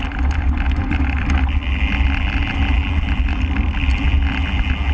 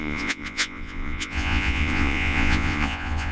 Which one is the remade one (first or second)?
second